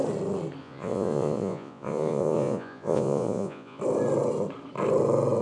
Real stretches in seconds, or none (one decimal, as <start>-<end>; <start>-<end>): 0.0-0.6; 3.8-5.4